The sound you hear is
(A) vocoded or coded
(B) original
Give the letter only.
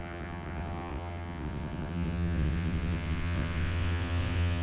A